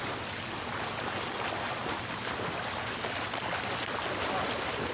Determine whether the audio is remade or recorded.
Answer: recorded